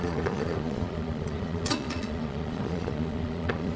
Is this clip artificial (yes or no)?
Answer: yes